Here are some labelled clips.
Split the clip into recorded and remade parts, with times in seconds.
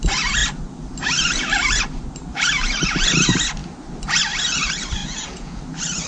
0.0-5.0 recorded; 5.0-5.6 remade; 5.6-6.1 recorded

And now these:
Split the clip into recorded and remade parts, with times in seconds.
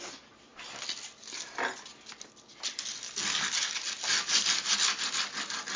0.0-5.8 recorded